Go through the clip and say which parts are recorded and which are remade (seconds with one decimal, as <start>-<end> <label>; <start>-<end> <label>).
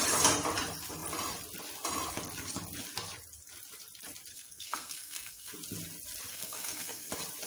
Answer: 0.0-4.3 recorded; 4.3-5.5 remade; 5.5-6.3 recorded; 6.3-7.1 remade; 7.1-7.5 recorded